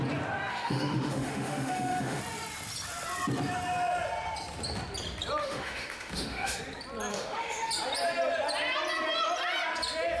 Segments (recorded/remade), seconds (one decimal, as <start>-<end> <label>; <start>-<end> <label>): 0.0-0.5 recorded; 0.5-2.2 remade; 2.2-5.4 recorded; 5.4-6.6 remade; 6.6-7.1 recorded; 7.1-7.7 remade; 7.7-10.2 recorded